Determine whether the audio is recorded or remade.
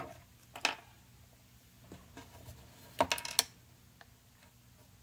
recorded